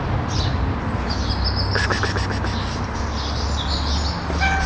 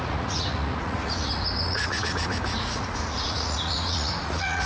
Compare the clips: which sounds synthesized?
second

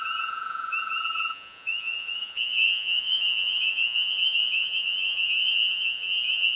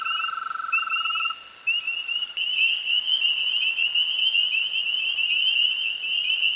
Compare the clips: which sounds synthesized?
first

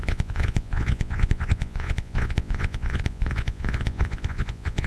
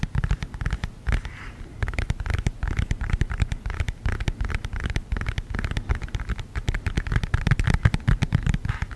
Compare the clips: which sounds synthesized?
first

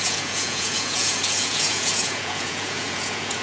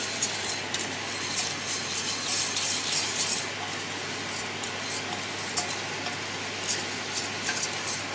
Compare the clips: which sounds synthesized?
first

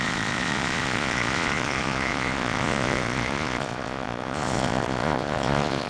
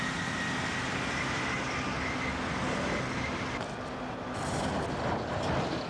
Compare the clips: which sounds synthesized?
first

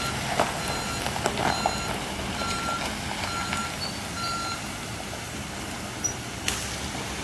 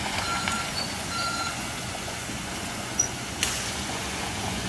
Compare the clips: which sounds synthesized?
second